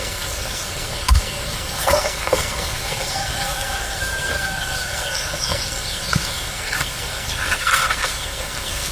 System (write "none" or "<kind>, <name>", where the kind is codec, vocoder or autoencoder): codec, SNAC